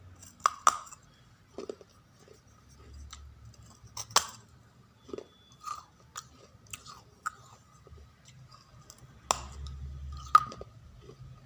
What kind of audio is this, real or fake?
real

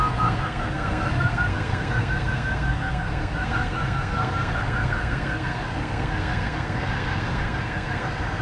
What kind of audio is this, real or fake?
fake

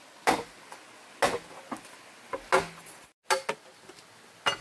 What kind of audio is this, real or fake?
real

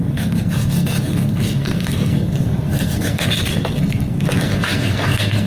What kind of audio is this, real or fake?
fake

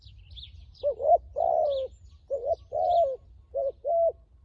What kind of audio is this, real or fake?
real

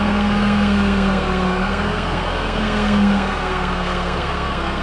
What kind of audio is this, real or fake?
fake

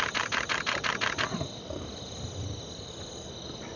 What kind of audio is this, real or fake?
real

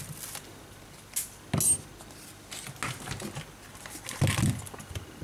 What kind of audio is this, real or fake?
real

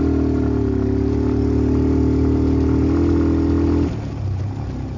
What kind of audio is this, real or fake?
real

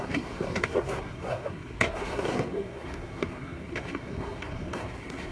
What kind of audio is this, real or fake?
fake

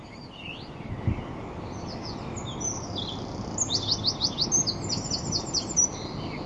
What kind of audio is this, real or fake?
real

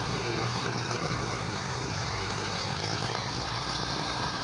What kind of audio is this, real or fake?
fake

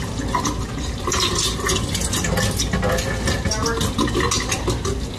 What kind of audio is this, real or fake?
real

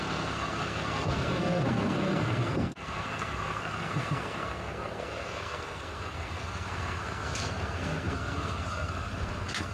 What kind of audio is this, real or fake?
fake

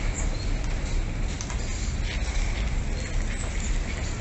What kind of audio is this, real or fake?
real